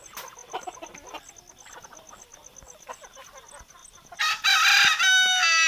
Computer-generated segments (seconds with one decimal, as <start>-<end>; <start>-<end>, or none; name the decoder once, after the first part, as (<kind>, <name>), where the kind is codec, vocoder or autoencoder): none